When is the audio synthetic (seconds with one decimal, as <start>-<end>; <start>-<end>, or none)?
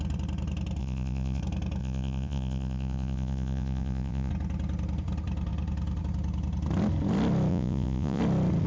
0.8-1.4; 1.8-4.3; 7.5-8.2